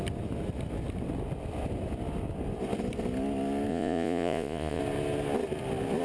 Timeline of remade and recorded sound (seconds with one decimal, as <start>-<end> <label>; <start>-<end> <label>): 0.0-3.7 recorded; 3.7-4.8 remade; 4.8-6.0 recorded